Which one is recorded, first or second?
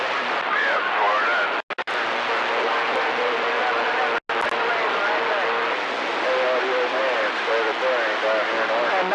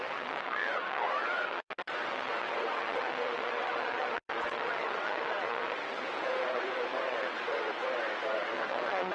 first